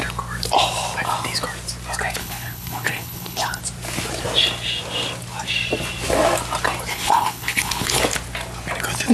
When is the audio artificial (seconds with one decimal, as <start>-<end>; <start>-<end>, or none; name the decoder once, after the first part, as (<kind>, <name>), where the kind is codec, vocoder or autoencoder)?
2.2-3.6 (codec, HILCodec); 6.9-8.0